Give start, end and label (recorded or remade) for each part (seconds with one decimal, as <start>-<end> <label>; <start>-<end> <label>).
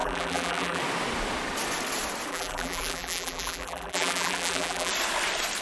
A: 0.0-0.8 remade; 0.8-2.3 recorded; 2.3-4.9 remade; 4.9-5.6 recorded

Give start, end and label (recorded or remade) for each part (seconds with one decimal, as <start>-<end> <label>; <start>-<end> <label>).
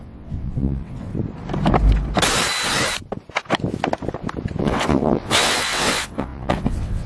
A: 0.0-1.1 remade; 1.1-4.6 recorded; 4.6-7.1 remade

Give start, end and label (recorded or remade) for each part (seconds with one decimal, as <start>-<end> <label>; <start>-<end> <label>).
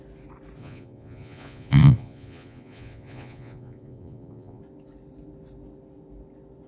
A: 0.0-0.6 recorded; 0.6-4.6 remade; 4.6-6.7 recorded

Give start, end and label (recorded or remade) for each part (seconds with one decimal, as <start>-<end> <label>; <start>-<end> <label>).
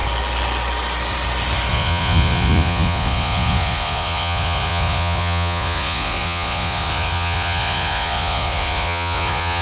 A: 0.0-1.7 recorded; 1.7-9.6 remade